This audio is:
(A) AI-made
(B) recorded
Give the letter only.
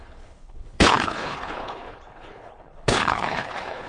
A